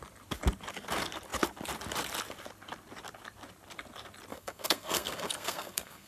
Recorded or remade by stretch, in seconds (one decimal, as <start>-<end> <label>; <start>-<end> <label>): 0.0-4.3 recorded; 4.3-6.1 remade